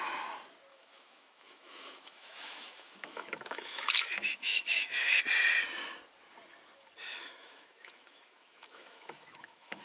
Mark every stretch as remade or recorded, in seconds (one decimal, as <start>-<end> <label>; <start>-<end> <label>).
0.0-0.7 recorded; 0.7-5.2 remade; 5.2-7.1 recorded; 7.1-9.8 remade